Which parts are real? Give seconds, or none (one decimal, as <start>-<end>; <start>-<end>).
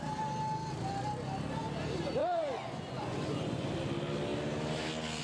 0.0-2.2; 3.7-5.2